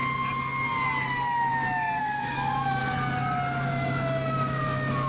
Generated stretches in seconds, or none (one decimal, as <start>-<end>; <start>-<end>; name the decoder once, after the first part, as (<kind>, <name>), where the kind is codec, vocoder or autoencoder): 2.0-2.8 (autoencoder, DAC-VAE); 3.7-5.1